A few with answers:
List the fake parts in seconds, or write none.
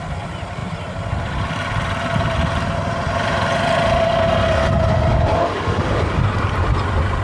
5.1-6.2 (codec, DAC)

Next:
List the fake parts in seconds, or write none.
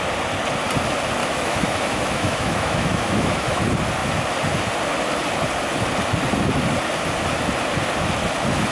1.2-3.6 (autoencoder, DAC-VAE)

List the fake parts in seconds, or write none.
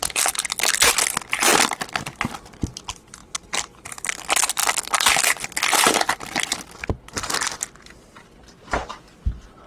3.2-4.0 (vocoder, BigVGAN v2)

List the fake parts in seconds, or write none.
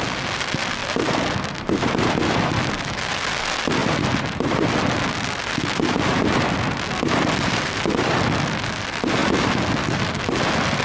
none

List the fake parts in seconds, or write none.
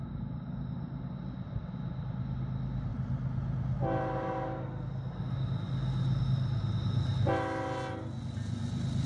none